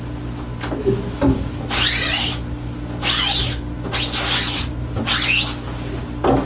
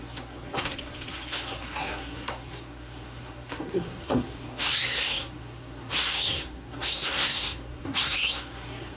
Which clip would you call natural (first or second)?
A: first